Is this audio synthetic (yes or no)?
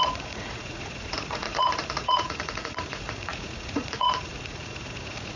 yes